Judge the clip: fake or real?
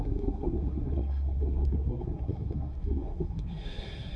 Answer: fake